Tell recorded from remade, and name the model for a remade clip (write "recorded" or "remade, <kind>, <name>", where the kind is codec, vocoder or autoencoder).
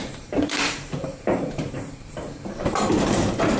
remade, vocoder, BigVGAN v2